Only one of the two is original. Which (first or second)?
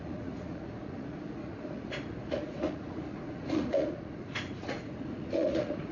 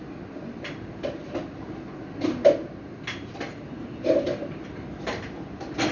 second